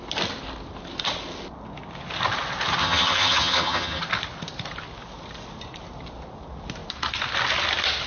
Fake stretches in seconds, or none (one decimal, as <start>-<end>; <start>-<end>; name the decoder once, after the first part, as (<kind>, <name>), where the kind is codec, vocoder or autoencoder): 2.8-4.0 (vocoder, HiFi-GAN)